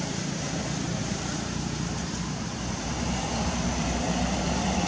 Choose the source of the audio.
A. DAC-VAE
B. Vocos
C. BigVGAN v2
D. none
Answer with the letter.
C